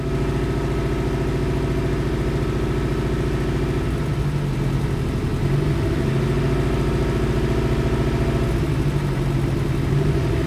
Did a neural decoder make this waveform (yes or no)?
no